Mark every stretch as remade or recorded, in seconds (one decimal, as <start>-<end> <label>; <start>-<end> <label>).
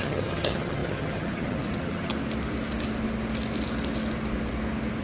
0.0-2.1 remade; 2.1-5.0 recorded